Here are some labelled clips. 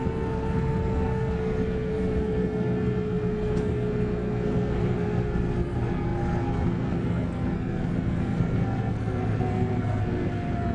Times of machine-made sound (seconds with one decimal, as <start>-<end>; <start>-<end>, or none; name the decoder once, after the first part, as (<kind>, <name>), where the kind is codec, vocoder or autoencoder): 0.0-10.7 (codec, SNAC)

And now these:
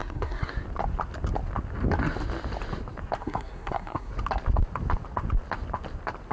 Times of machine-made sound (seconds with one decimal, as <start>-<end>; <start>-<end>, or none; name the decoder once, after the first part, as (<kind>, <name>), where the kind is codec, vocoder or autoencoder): 0.0-0.5 (codec, SNAC); 3.2-4.1

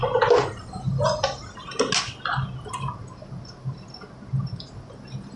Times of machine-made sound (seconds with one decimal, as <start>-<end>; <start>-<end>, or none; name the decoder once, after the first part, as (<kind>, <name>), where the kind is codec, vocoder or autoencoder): none